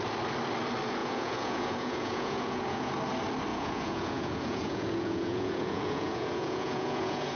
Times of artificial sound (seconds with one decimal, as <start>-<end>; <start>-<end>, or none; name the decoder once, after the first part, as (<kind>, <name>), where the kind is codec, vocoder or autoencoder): 1.0-2.9 (vocoder, Vocos); 3.5-7.4